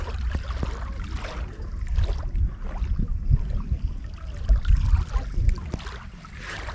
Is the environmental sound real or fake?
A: real